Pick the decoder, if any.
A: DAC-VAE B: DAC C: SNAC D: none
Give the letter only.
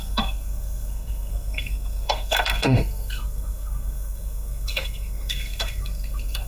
C